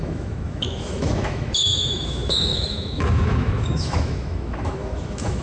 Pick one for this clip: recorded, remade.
remade